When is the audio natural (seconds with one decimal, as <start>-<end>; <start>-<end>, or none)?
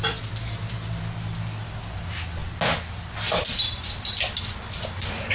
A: 0.0-5.3